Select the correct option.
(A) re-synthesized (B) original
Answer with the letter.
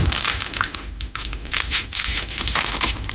A